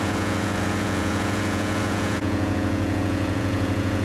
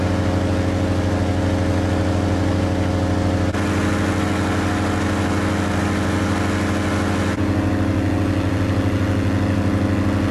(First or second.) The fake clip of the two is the first